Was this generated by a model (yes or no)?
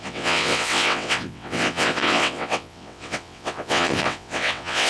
yes